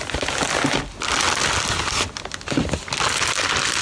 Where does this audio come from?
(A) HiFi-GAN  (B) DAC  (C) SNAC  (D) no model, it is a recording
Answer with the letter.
D